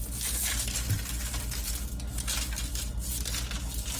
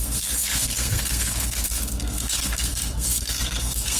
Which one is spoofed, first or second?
second